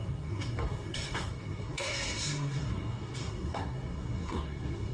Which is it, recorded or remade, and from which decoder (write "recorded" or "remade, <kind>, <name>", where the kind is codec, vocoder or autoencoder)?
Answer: remade, codec, SNAC